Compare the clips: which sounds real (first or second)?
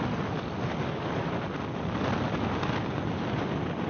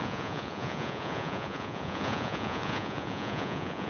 first